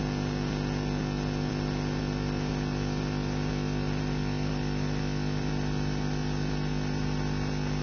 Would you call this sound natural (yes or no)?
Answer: yes